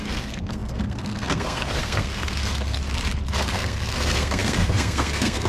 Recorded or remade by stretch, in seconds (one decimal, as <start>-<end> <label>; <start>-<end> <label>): 0.0-2.8 remade; 2.8-3.3 recorded; 3.3-5.5 remade